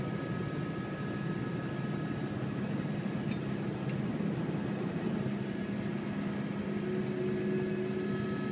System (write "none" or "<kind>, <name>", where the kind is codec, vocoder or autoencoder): none